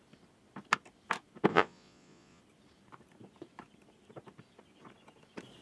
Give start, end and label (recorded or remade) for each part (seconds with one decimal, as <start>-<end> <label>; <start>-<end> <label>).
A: 0.0-1.5 recorded; 1.5-2.4 remade; 2.4-5.6 recorded